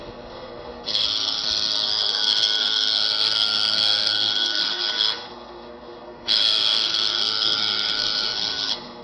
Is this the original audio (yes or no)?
no